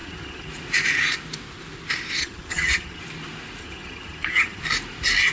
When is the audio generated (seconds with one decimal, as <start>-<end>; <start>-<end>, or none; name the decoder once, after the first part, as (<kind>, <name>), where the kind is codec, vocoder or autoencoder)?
0.0-0.5 (vocoder, HiFi-GAN); 2.2-3.0; 3.6-4.6